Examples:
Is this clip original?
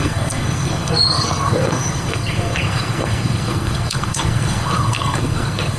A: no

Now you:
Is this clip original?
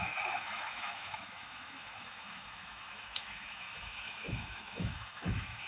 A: no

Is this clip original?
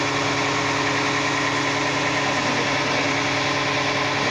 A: yes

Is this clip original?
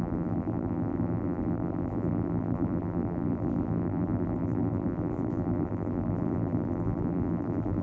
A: no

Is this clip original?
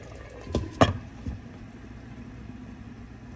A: yes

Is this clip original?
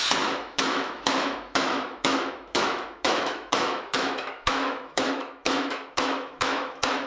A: no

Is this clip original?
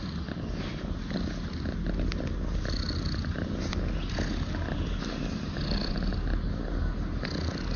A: yes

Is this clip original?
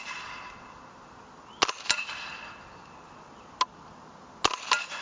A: yes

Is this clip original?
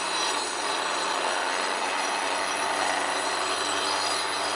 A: yes